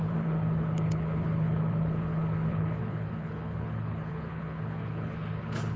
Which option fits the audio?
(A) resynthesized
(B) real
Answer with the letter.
A